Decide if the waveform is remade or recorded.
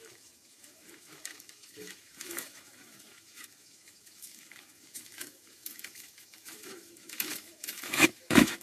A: remade